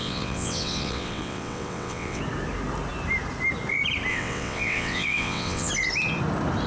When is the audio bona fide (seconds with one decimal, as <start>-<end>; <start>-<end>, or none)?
2.2-4.1; 5.7-6.7